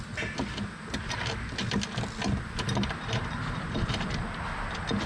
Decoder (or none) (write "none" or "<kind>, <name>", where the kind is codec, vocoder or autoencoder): none